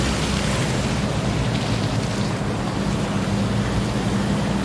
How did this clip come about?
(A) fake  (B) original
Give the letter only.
B